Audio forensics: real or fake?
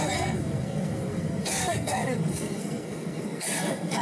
fake